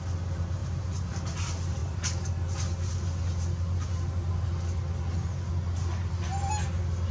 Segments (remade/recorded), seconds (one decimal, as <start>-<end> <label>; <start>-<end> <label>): 0.0-7.1 recorded